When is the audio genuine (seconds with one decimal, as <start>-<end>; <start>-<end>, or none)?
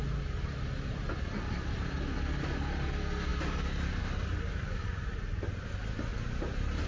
0.0-6.1